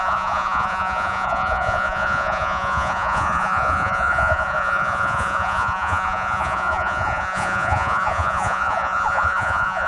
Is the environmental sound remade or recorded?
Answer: remade